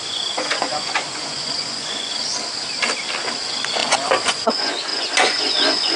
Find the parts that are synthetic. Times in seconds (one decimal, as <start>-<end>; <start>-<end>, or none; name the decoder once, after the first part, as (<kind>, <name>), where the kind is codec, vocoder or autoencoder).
0.0-2.1 (vocoder, Vocos); 3.4-6.0